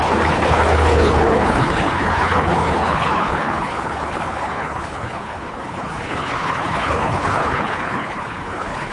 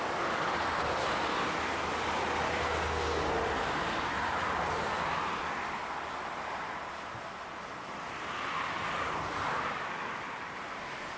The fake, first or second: first